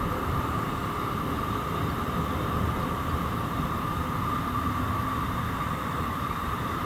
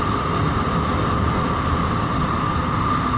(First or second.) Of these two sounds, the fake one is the first